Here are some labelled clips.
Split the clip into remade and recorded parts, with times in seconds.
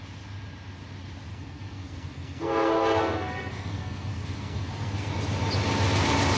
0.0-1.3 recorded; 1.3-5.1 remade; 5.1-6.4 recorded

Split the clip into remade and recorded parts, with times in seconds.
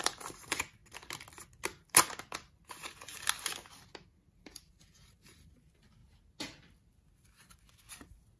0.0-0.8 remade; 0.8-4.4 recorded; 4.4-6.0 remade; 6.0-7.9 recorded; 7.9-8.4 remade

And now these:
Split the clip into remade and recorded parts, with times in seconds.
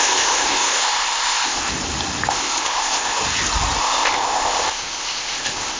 0.0-1.7 remade; 1.7-2.3 recorded; 2.3-3.2 remade; 3.2-3.8 recorded; 3.8-5.8 remade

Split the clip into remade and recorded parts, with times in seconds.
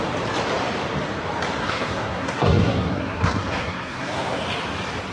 0.0-1.6 recorded; 1.6-4.4 remade; 4.4-5.1 recorded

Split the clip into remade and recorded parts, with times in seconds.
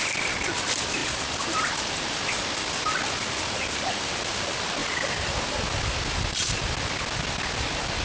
0.0-1.0 recorded; 1.0-1.9 remade; 1.9-4.8 recorded; 4.8-5.4 remade; 5.4-8.0 recorded